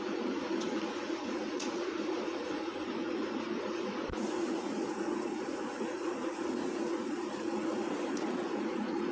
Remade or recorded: remade